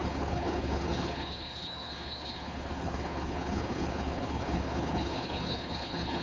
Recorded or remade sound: remade